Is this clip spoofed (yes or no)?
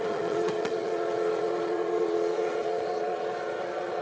yes